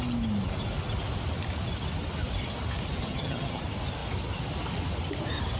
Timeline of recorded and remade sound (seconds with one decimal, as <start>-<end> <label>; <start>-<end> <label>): 0.0-3.0 recorded; 3.0-3.6 remade; 3.6-5.6 recorded